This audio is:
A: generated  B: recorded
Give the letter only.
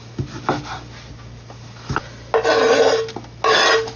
B